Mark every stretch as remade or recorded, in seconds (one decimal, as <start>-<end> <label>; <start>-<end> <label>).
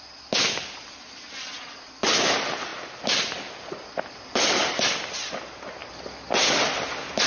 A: 0.0-7.3 recorded